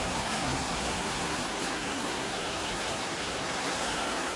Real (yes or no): no